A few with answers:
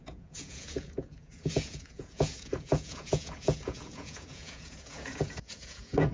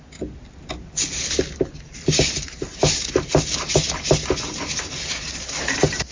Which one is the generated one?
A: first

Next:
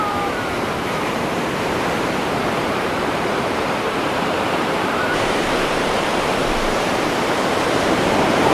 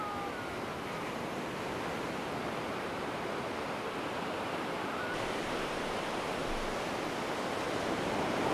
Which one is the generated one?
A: first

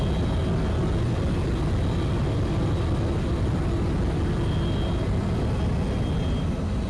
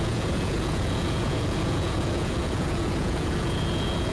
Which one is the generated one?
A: second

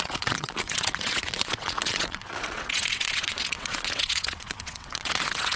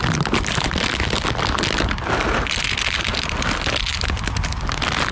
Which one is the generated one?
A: first